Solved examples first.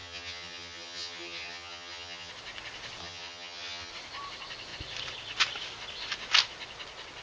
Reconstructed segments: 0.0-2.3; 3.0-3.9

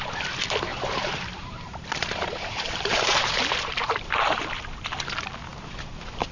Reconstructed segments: 0.7-4.5; 5.5-6.3

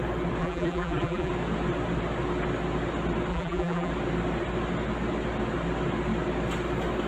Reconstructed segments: 0.4-1.3; 3.3-3.9